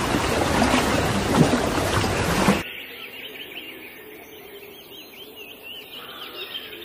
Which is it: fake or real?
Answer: real